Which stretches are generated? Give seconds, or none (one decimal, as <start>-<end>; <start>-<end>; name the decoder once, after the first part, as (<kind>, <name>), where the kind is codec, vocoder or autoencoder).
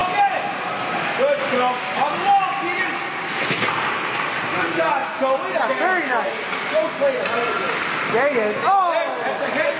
none